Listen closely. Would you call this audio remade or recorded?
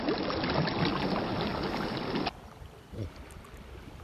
recorded